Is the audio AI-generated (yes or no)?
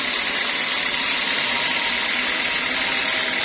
no